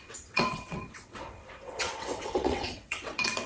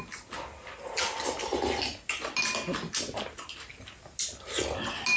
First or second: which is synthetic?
first